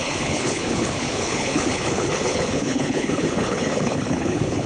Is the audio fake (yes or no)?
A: yes